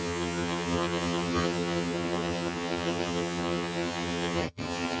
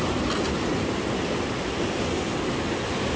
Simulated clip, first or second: first